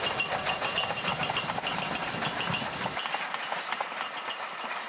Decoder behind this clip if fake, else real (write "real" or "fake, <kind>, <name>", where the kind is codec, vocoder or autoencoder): real